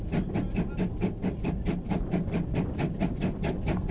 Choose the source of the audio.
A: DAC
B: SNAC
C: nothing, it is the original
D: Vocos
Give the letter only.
C